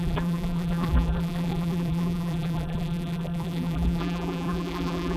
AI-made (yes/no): yes